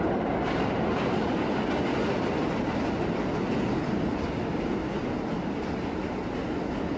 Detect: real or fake real